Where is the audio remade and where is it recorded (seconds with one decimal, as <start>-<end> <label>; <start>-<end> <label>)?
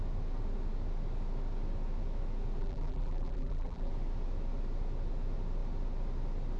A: 0.0-2.6 recorded; 2.6-3.9 remade; 3.9-6.6 recorded